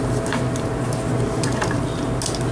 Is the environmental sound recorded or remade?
recorded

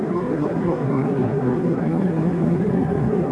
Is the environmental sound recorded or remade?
remade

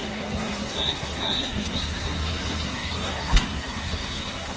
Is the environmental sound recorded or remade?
remade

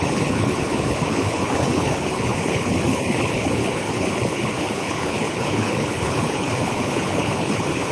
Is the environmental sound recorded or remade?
remade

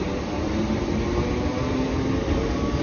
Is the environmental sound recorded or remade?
recorded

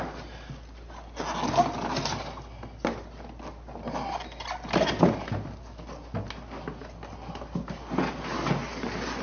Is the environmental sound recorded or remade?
recorded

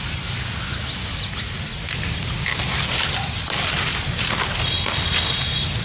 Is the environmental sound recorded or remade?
recorded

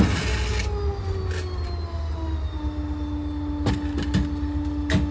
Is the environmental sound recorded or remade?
recorded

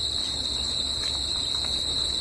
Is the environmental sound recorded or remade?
recorded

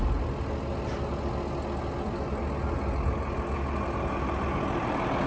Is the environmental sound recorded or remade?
recorded